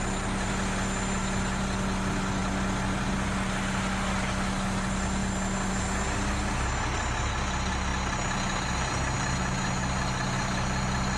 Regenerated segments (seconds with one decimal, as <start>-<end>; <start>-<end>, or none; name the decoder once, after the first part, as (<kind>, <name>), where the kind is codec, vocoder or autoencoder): none